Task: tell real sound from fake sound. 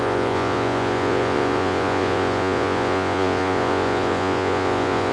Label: fake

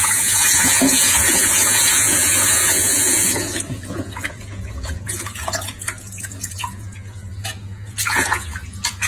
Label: fake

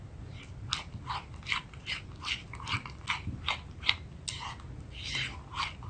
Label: real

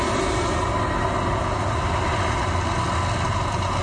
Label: real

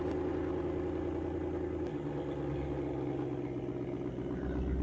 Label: real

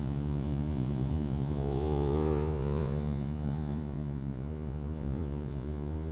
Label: fake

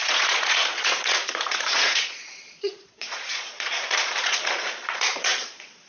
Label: fake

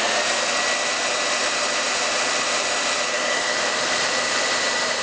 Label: real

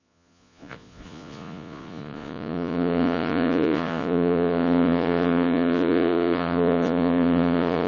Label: fake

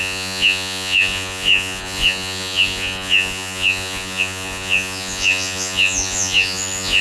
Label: fake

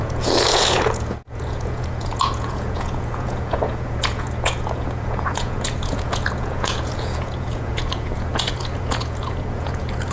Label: fake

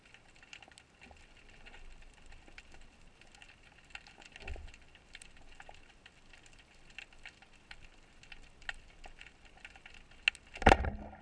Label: real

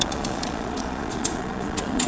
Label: fake